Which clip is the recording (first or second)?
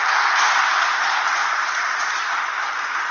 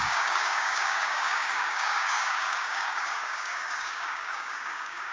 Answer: first